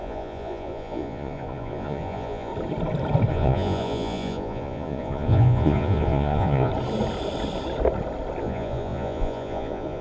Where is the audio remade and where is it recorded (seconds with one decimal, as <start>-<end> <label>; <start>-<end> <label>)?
0.0-2.5 remade; 2.5-3.3 recorded; 3.3-6.7 remade; 6.7-8.4 recorded; 8.4-10.0 remade